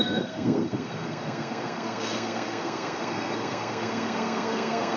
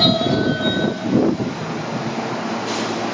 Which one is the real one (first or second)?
second